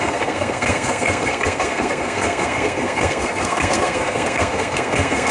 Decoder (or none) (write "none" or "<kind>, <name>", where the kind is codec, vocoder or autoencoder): codec, SNAC